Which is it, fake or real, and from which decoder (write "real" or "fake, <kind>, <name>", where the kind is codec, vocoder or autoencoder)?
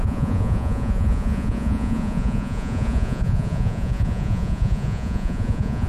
fake, vocoder, Vocos